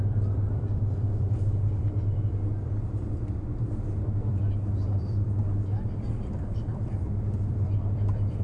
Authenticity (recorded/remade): remade